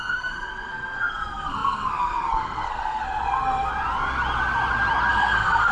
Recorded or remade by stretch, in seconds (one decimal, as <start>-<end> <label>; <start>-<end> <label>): 0.0-3.7 remade; 3.7-5.1 recorded; 5.1-5.7 remade

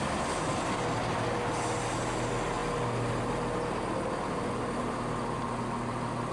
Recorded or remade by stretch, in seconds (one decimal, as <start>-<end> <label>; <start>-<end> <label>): 0.0-6.3 recorded

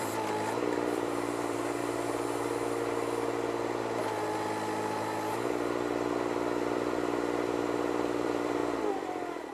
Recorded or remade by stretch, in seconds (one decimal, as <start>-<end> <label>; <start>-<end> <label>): 0.0-1.8 remade; 1.8-6.9 recorded; 6.9-9.5 remade

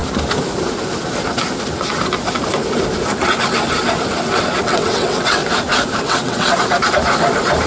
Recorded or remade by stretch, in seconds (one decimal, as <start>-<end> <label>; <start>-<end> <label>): 0.0-4.6 recorded; 4.6-5.4 remade; 5.4-6.0 recorded; 6.0-6.5 remade; 6.5-7.7 recorded

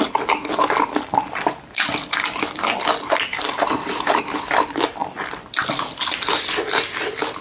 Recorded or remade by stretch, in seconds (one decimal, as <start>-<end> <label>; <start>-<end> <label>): 0.0-3.3 recorded; 3.3-4.2 remade; 4.2-7.4 recorded

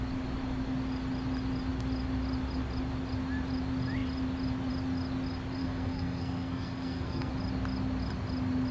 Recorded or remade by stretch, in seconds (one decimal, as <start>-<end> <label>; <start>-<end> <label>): 0.0-5.6 recorded; 5.6-7.3 remade; 7.3-8.7 recorded